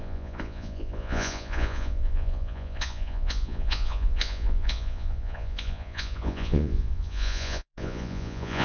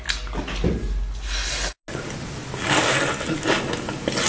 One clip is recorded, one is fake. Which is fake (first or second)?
first